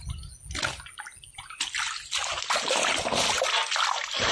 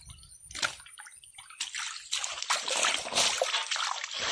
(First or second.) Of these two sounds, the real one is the first